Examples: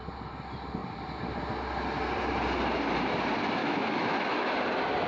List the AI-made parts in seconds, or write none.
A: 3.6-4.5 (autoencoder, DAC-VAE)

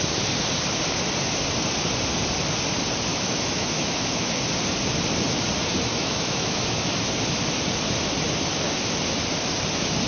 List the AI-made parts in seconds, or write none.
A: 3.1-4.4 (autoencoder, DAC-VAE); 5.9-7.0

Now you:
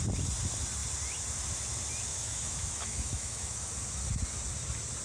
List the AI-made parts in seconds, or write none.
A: 2.1-3.7 (autoencoder, DAC-VAE)